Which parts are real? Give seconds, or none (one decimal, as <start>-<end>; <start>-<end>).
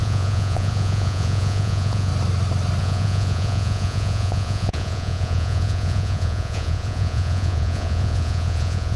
2.1-2.8